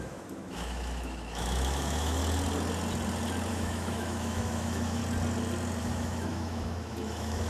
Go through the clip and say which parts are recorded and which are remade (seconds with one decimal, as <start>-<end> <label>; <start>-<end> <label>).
0.0-2.2 remade; 2.2-3.5 recorded; 3.5-5.0 remade; 5.0-5.8 recorded; 5.8-7.5 remade